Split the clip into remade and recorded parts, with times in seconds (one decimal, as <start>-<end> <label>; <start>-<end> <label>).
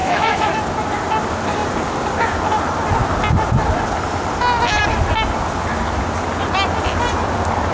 0.0-0.5 remade; 0.5-7.7 recorded